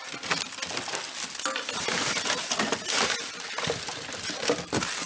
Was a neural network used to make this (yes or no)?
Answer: no